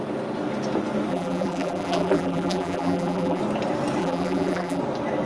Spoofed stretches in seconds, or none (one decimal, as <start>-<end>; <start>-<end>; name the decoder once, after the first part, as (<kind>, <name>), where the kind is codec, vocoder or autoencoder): 1.1-3.4 (vocoder, BigVGAN v2); 4.0-4.8